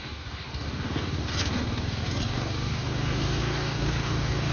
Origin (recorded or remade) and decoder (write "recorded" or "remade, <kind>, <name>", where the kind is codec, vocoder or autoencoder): remade, codec, DAC